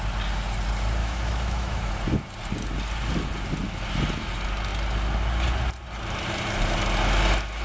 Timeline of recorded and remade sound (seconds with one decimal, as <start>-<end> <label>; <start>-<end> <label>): 0.0-1.0 recorded; 1.0-1.9 remade; 1.9-7.6 recorded